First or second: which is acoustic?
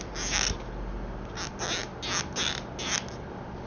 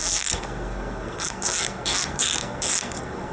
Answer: first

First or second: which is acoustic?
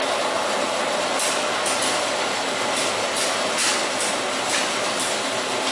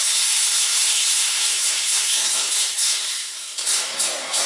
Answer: first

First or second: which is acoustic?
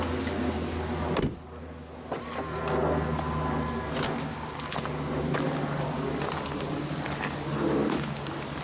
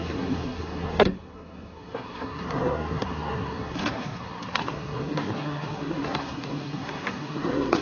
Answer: first